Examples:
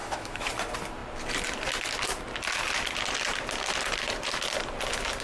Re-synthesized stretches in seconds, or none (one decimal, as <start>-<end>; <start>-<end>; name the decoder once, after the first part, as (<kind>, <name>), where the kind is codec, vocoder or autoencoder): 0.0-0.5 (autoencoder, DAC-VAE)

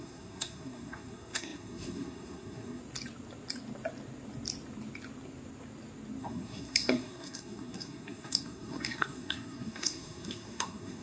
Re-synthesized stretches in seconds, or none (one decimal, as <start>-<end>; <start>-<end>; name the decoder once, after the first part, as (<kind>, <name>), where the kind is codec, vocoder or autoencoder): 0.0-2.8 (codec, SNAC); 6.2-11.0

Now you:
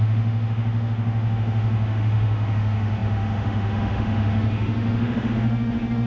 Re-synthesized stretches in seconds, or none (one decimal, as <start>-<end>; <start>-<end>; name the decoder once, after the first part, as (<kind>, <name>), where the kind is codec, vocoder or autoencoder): 0.0-6.1 (autoencoder, DAC-VAE)

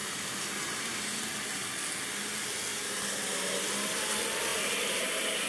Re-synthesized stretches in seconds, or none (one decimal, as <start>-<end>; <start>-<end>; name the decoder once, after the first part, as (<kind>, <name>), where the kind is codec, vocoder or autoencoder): 0.0-1.8 (vocoder, BigVGAN v2); 2.7-3.6

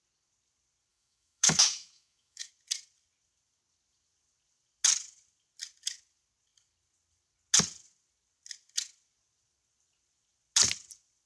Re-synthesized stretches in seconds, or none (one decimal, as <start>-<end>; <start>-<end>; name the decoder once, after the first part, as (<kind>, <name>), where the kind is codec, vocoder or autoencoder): 0.9-2.5 (autoencoder, DAC-VAE)